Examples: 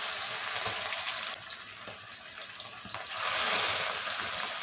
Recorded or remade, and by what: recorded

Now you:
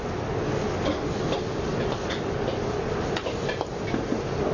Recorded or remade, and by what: recorded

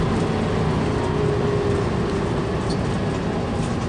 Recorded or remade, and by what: recorded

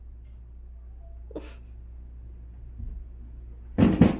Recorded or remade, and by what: recorded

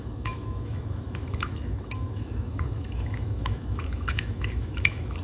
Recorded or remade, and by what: remade, autoencoder, DAC-VAE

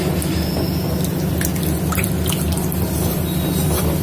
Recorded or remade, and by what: recorded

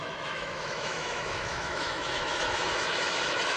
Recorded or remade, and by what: remade, autoencoder, DAC-VAE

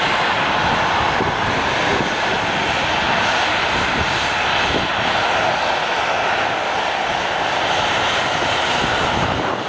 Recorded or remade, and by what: recorded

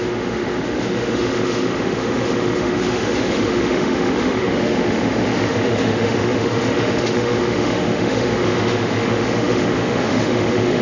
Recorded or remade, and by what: remade, autoencoder, DAC-VAE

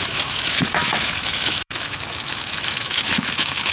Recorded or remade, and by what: remade, autoencoder, DAC-VAE